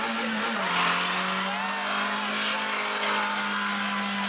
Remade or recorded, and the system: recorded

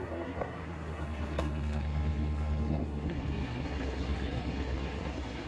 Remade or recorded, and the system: remade, codec, SNAC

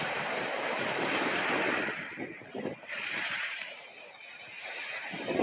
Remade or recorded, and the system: remade, vocoder, BigVGAN v2